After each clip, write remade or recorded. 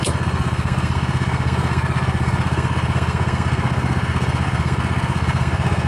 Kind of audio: remade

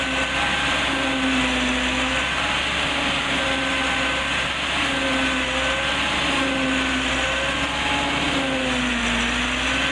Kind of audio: recorded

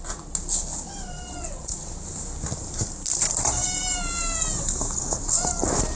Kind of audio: recorded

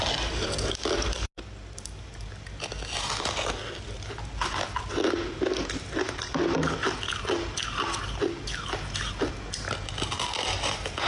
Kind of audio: recorded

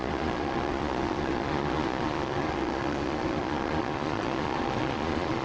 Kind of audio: remade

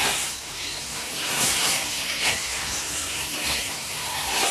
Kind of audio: remade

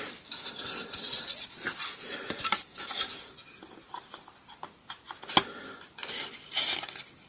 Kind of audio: recorded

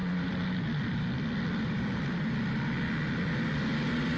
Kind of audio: recorded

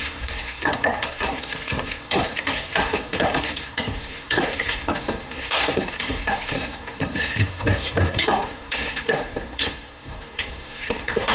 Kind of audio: remade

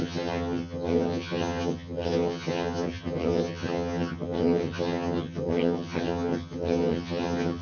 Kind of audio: remade